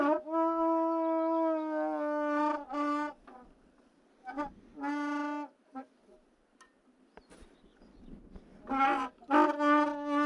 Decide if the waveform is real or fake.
real